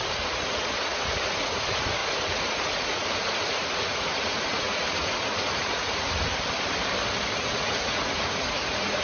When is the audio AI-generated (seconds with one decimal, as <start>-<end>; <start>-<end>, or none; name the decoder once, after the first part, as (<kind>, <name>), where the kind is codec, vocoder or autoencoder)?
0.0-6.3 (vocoder, Vocos); 7.3-9.0

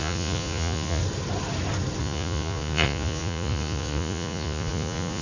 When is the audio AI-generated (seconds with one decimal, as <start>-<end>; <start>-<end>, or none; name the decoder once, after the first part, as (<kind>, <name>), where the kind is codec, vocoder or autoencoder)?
0.0-1.0 (vocoder, Vocos); 2.0-5.2